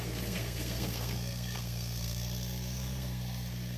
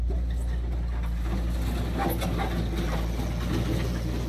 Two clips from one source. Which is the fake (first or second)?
first